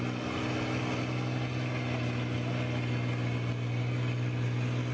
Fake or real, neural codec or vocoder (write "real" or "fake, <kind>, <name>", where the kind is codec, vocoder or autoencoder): real